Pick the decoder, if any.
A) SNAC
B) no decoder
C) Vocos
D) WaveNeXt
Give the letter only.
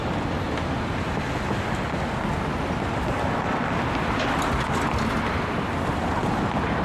B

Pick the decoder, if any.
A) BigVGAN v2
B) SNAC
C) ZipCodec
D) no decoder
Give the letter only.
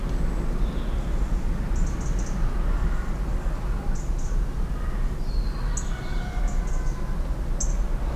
D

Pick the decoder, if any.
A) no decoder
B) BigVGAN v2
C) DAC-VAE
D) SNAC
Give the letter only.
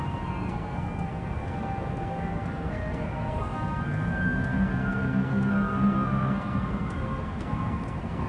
D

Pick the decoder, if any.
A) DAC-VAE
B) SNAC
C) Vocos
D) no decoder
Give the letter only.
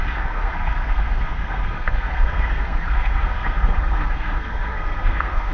B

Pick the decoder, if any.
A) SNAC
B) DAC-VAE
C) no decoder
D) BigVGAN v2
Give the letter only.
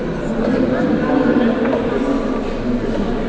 C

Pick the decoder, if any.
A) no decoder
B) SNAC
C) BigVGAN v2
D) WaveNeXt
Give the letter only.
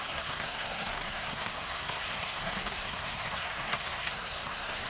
B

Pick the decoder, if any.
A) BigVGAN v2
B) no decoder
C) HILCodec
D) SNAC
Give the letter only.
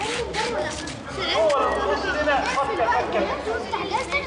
B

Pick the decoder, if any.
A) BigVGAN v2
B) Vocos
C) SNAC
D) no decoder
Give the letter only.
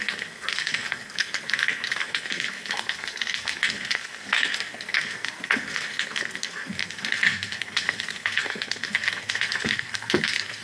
C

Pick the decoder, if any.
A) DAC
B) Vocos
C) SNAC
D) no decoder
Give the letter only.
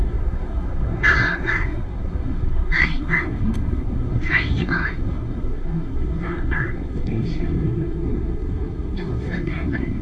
C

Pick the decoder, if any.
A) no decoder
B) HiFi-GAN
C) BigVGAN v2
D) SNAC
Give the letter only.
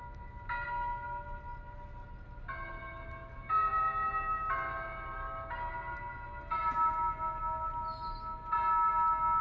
A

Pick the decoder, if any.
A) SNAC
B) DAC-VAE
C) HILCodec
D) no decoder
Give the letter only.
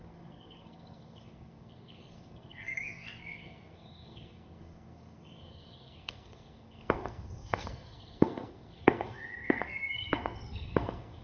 A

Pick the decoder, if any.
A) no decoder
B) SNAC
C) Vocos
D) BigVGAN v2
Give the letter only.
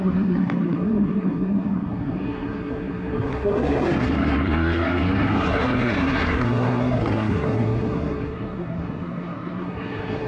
B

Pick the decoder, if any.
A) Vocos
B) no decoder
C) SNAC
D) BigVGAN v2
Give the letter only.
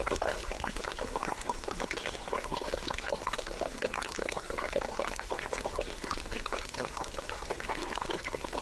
C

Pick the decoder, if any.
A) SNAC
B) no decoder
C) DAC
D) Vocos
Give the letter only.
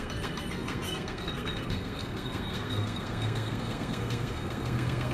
A